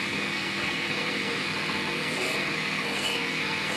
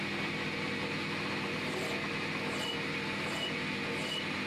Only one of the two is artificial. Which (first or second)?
first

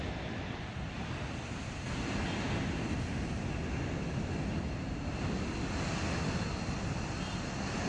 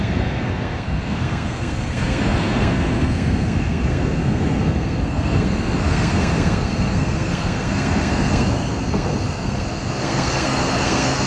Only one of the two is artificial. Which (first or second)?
second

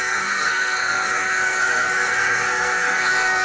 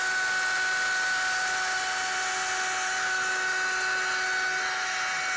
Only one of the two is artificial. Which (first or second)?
first